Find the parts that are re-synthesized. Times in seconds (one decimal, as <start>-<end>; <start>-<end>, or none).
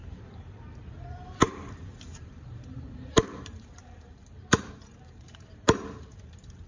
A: 0.0-6.7